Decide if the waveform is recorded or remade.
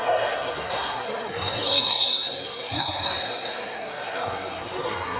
remade